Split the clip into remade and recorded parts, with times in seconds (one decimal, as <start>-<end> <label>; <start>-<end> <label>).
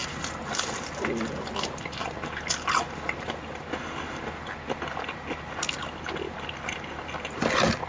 0.0-0.6 remade; 0.6-7.9 recorded